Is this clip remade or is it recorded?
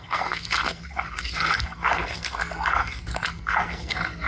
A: remade